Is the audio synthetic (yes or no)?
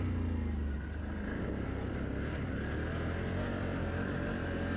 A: no